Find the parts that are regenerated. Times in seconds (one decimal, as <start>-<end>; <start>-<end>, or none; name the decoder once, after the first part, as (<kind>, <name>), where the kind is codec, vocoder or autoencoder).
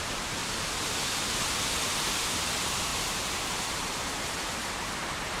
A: 0.0-0.4 (vocoder, BigVGAN v2); 2.4-5.4